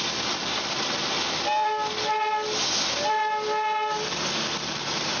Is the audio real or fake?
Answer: real